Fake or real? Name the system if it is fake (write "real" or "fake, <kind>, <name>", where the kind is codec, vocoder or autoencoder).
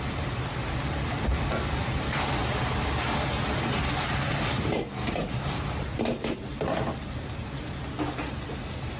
real